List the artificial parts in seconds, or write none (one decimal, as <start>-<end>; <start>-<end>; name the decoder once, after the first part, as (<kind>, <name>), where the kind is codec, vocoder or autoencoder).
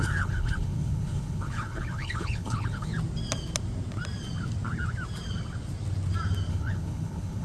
0.0-2.9 (codec, HILCodec); 6.5-7.4